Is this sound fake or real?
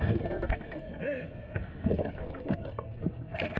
fake